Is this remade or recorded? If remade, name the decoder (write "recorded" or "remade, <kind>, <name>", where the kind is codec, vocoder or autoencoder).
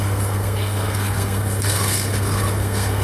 remade, codec, SNAC